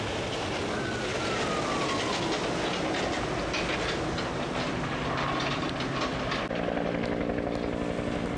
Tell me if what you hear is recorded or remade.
recorded